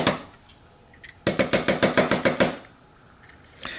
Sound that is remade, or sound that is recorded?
recorded